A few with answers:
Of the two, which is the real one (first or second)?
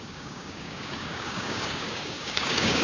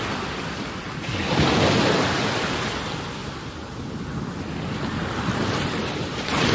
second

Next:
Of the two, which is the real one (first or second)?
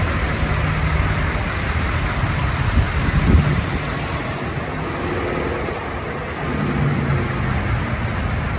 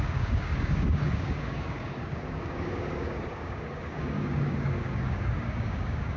first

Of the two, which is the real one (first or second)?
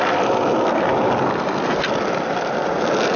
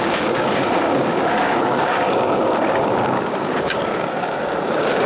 first